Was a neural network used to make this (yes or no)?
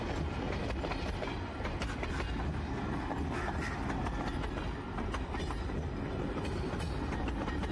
no